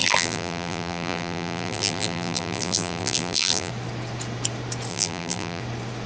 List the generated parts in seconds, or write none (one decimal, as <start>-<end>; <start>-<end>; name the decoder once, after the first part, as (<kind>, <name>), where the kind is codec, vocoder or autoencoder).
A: 0.0-3.7 (vocoder, BigVGAN v2); 4.9-5.6